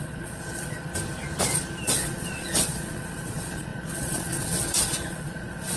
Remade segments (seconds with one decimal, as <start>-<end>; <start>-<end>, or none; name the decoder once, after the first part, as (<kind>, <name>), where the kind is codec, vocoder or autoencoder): 0.0-0.9 (vocoder, Vocos); 1.8-5.8